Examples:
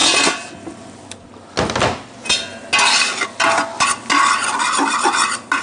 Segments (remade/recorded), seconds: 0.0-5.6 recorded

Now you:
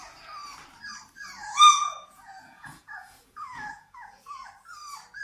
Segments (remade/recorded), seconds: 0.0-1.4 recorded; 1.4-4.5 remade; 4.5-5.2 recorded

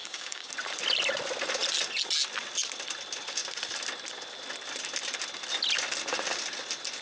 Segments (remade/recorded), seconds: 0.0-0.5 remade; 0.5-7.0 recorded

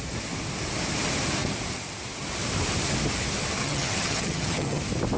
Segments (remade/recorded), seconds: 0.0-3.6 recorded; 3.6-4.8 remade; 4.8-5.2 recorded

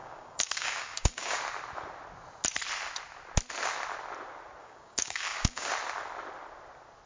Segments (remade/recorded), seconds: 0.0-1.4 remade; 1.4-4.6 recorded; 4.6-5.7 remade; 5.7-7.1 recorded